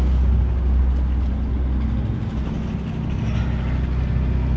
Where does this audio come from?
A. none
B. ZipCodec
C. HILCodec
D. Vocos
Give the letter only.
A